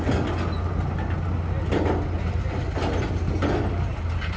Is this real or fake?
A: real